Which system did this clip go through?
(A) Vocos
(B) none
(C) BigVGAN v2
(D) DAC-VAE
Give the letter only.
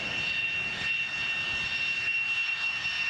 B